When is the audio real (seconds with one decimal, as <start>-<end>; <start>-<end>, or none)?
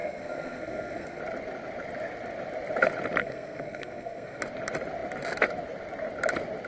1.2-3.2; 4.4-6.7